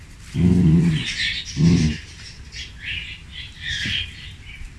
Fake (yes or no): no